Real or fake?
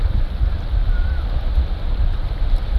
fake